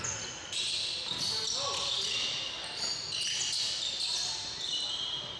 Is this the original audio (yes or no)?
yes